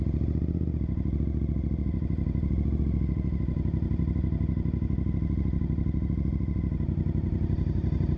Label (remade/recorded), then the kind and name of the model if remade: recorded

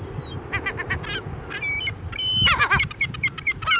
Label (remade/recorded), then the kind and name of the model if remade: recorded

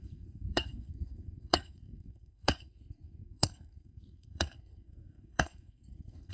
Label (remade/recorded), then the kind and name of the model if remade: remade, codec, SNAC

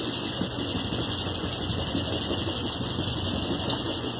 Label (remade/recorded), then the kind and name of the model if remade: remade, vocoder, Vocos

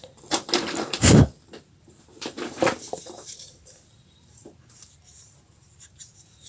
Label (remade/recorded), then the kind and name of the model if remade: remade, vocoder, BigVGAN v2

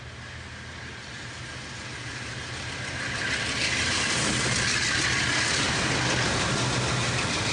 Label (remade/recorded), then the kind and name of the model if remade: recorded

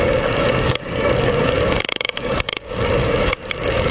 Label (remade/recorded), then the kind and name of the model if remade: remade, codec, DAC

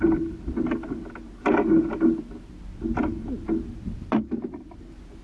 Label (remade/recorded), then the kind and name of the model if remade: recorded